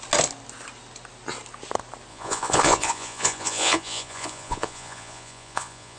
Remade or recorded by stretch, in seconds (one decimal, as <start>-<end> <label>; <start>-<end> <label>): 0.0-2.1 recorded; 2.1-6.0 remade